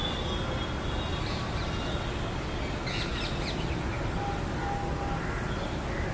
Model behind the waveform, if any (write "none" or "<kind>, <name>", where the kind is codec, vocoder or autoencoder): none